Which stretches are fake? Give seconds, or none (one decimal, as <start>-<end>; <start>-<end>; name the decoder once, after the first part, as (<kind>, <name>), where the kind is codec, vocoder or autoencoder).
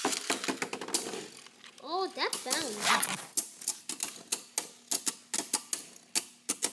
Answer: none